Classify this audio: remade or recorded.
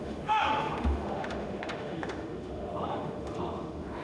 remade